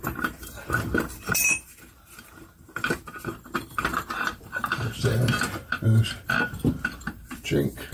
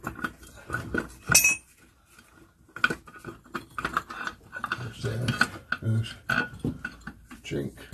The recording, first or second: second